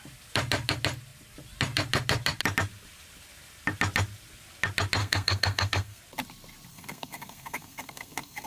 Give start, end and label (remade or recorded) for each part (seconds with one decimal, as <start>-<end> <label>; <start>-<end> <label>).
0.0-5.0 recorded; 5.0-6.0 remade; 6.0-6.7 recorded; 6.7-8.5 remade